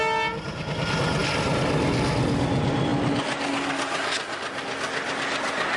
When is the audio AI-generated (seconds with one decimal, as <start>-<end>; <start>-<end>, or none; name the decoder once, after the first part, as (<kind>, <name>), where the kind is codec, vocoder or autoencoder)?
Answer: none